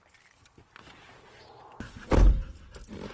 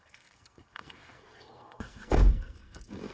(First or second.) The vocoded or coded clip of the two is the second